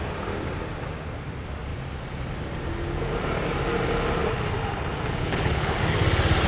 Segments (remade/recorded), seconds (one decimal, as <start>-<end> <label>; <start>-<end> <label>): 0.0-5.2 recorded; 5.2-5.8 remade; 5.8-6.5 recorded